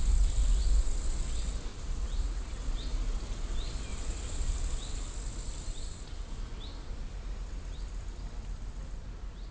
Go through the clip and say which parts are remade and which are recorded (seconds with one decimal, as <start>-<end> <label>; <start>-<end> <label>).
0.0-1.7 recorded; 1.7-2.6 remade; 2.6-3.9 recorded; 3.9-4.5 remade; 4.5-5.7 recorded; 5.7-6.3 remade; 6.3-9.5 recorded